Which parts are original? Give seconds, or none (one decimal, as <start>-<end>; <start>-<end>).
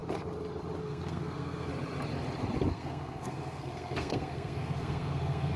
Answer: 0.0-0.8; 1.7-2.7